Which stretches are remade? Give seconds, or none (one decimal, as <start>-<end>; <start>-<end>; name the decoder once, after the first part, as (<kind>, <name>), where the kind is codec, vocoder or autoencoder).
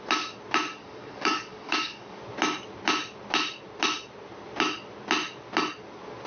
0.7-2.2 (codec, DAC)